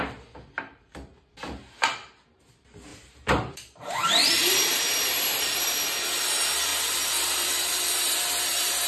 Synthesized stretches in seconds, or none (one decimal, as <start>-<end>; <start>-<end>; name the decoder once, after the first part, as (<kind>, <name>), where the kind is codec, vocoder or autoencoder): 2.9-5.9 (vocoder, BigVGAN v2); 6.7-8.9